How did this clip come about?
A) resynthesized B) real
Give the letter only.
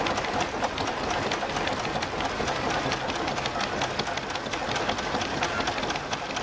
B